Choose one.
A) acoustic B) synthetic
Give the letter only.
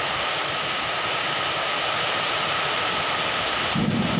A